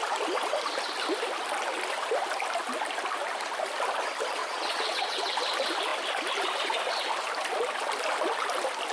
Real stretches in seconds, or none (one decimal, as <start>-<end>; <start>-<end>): 0.0-4.4; 5.2-8.9